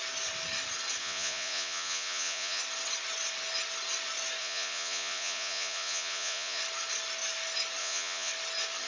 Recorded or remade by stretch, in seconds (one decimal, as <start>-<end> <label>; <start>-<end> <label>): 0.0-1.0 recorded; 1.0-2.6 remade; 2.6-4.4 recorded; 4.4-6.6 remade; 6.6-7.8 recorded; 7.8-8.3 remade; 8.3-8.9 recorded